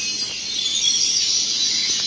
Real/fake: real